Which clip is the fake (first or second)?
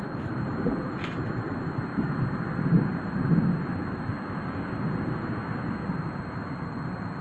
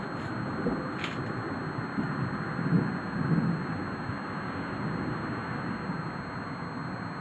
first